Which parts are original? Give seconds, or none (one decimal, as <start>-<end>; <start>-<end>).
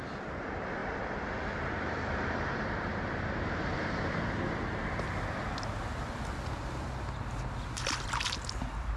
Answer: 0.0-9.0